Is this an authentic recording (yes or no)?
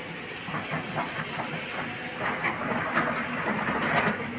yes